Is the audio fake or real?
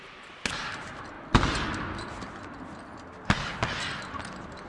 real